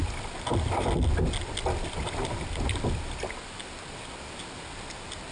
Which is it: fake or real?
real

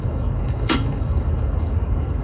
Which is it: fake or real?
fake